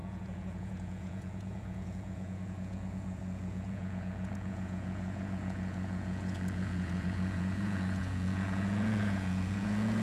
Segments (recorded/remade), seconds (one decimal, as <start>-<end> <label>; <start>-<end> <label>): 0.0-10.0 remade